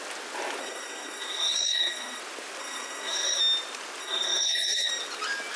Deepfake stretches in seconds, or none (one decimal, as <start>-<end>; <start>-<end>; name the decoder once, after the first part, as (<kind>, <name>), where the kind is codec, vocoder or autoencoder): 0.6-2.2 (codec, SNAC); 2.6-3.4; 4.0-4.9